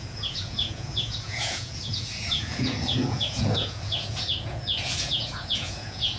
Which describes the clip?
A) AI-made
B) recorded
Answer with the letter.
A